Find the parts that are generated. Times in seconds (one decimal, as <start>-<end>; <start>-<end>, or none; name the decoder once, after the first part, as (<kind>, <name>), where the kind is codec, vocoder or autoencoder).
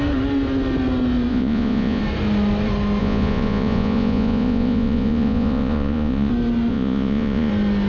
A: 1.3-2.0 (vocoder, Vocos); 3.0-6.3; 6.7-7.5